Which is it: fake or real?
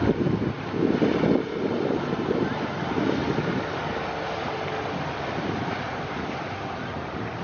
real